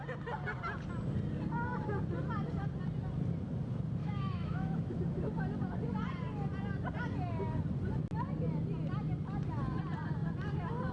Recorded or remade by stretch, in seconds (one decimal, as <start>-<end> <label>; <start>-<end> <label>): 0.0-4.0 recorded; 4.0-5.0 remade; 5.0-10.9 recorded